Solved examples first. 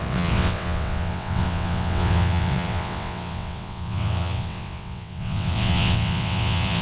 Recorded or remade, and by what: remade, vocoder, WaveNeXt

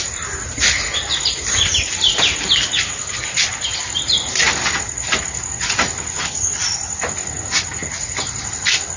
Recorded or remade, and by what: recorded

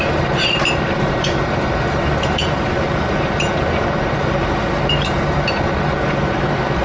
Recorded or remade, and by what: remade, vocoder, BigVGAN v2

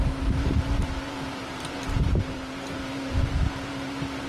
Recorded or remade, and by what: remade, vocoder, BigVGAN v2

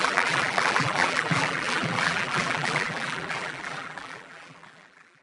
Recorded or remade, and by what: remade, vocoder, BigVGAN v2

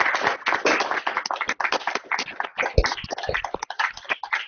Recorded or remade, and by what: recorded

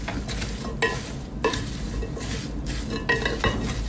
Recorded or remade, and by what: recorded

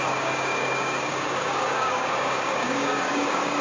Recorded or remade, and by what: remade, codec, DAC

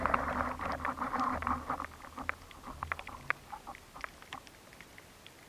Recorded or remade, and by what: recorded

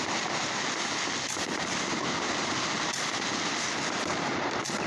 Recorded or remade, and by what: recorded